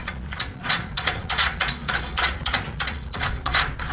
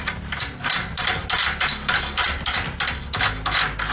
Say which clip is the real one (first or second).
second